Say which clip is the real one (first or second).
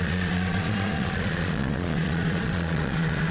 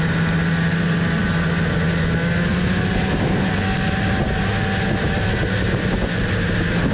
second